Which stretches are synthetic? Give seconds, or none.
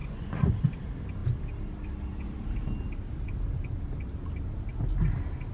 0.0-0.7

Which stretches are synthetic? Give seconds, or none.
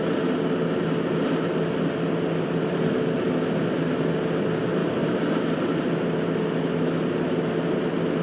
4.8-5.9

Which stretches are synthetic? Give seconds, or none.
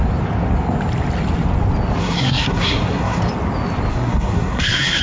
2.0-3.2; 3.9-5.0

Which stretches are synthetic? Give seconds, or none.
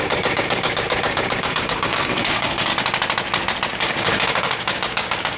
0.0-2.7; 3.7-5.4